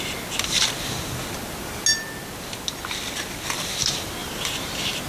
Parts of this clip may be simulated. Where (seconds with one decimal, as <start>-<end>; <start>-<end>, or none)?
4.2-5.1

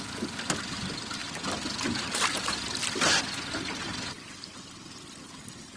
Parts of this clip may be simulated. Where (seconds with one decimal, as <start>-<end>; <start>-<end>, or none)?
none

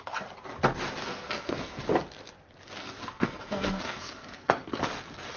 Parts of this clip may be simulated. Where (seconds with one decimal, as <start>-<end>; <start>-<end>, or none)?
1.0-1.8; 2.8-4.8

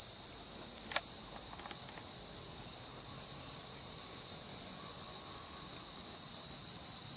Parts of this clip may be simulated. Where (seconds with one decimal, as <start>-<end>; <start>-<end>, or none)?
4.5-5.3

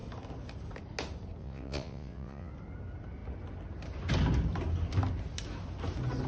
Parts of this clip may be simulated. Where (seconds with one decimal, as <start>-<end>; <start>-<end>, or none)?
1.4-2.5